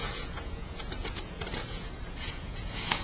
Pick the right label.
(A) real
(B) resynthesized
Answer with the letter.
B